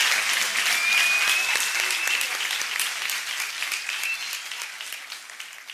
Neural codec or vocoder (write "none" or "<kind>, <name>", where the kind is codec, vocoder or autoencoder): none